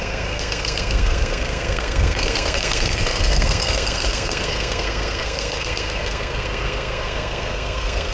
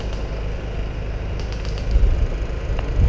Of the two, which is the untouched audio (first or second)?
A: second